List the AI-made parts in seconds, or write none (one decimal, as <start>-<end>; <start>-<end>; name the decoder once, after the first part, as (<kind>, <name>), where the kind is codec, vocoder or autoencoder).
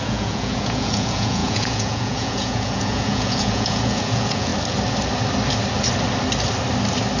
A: 0.0-4.5 (vocoder, Vocos)